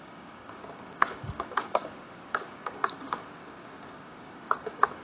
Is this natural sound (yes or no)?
no